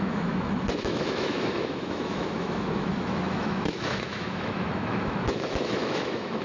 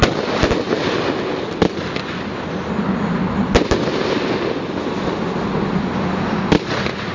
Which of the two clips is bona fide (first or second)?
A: second